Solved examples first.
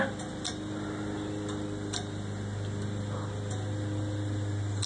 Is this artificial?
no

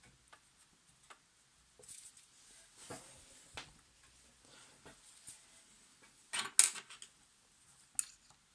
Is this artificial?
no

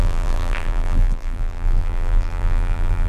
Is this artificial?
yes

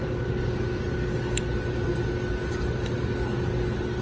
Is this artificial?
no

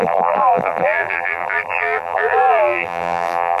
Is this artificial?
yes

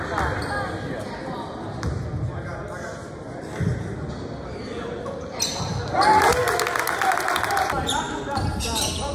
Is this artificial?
no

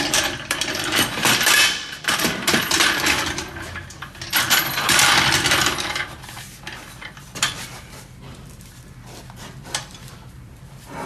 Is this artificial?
yes